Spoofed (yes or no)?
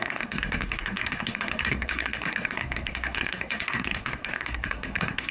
yes